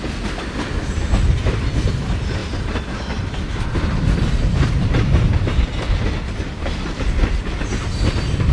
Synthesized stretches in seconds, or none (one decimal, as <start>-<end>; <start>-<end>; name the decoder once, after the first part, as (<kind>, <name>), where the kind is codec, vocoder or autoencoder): none